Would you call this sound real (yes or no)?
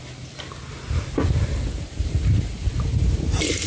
yes